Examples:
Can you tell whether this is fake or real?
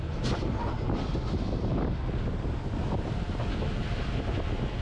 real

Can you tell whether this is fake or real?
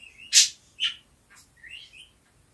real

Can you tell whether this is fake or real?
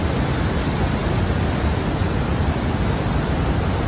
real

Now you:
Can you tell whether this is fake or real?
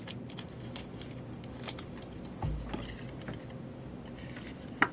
real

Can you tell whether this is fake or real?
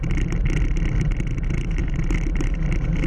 real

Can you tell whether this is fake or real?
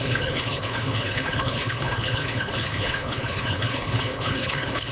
fake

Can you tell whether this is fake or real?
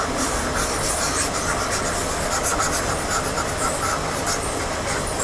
real